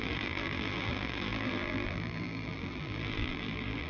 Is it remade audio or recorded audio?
remade